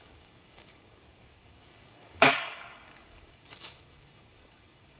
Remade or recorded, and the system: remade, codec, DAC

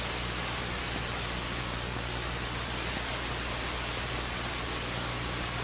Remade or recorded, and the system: recorded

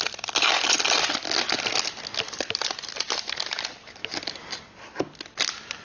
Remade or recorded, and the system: recorded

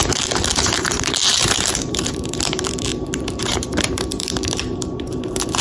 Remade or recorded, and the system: remade, vocoder, BigVGAN v2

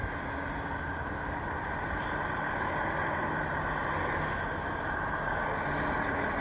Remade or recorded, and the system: recorded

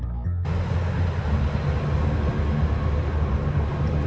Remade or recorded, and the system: recorded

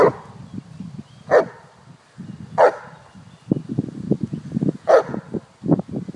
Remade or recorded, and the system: recorded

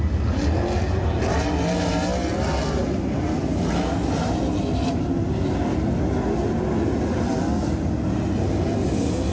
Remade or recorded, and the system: recorded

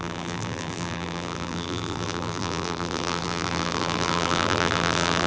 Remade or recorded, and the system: remade, vocoder, BigVGAN v2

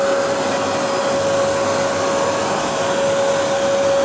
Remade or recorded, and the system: recorded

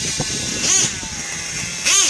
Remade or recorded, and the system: recorded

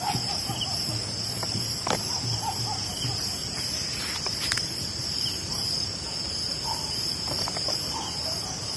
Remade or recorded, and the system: remade, vocoder, BigVGAN v2